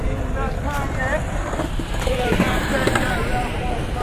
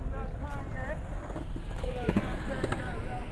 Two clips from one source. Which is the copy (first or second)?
first